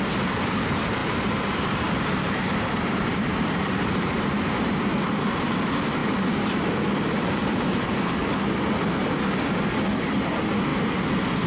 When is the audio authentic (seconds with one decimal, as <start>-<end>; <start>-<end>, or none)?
0.0-1.0; 4.9-6.0; 8.5-11.5